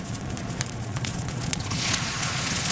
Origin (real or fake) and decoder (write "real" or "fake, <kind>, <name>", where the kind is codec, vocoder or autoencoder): fake, vocoder, Vocos